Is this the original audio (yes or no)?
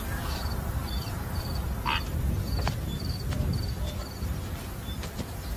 yes